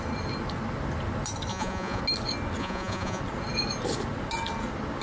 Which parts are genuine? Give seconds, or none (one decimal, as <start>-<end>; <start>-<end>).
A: 0.0-1.5; 2.0-2.6; 3.2-5.0